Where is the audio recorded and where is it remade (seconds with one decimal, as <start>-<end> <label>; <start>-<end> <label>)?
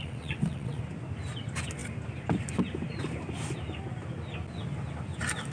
0.0-0.8 remade; 0.8-5.5 recorded